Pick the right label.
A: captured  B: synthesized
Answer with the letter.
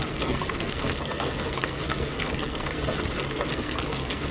B